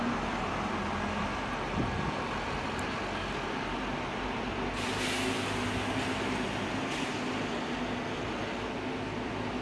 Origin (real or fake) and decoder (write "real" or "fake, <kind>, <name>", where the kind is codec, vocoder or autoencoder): real